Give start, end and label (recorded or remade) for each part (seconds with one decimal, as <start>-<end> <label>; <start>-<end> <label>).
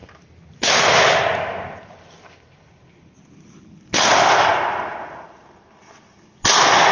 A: 0.0-4.1 recorded; 4.1-4.5 remade; 4.5-5.8 recorded; 5.8-6.9 remade